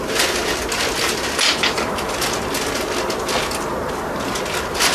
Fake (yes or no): no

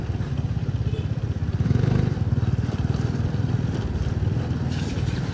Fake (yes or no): yes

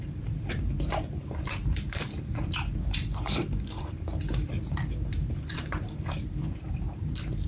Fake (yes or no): yes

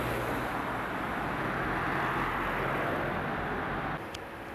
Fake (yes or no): no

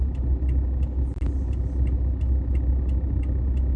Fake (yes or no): no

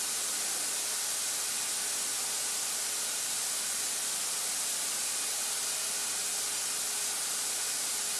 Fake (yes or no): no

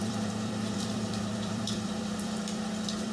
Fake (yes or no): yes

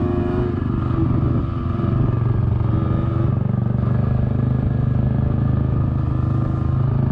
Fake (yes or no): no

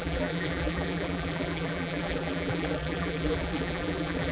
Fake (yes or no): yes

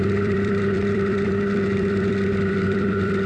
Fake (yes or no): yes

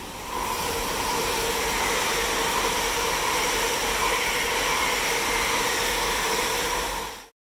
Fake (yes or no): no